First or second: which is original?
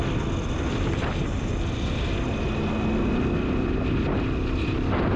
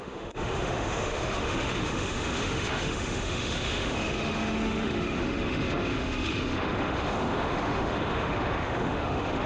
first